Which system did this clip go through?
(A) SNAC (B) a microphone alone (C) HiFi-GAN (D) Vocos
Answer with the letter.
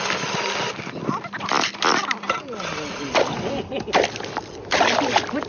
B